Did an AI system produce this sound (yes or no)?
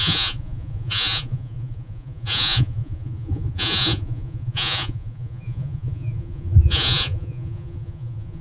yes